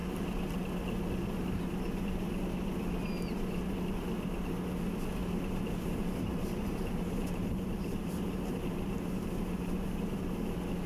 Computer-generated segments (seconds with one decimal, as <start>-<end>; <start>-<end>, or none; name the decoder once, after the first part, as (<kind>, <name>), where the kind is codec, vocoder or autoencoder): 5.2-10.2 (vocoder, BigVGAN v2)